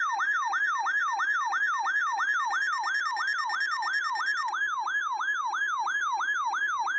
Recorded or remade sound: recorded